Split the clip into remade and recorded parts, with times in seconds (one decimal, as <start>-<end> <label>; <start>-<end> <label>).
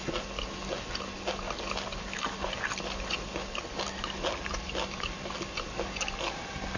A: 0.0-6.8 recorded